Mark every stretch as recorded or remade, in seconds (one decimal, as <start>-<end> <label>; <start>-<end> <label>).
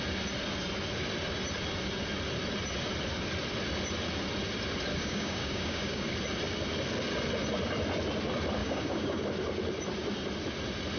0.0-4.9 recorded; 4.9-6.1 remade; 6.1-8.6 recorded; 8.6-9.2 remade; 9.2-11.0 recorded